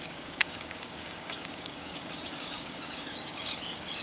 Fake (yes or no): yes